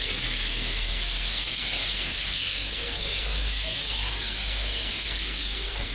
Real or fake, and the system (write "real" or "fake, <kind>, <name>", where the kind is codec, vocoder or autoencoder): fake, codec, SNAC